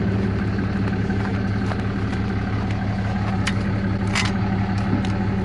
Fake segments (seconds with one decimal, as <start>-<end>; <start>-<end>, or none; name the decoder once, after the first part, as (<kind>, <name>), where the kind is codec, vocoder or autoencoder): none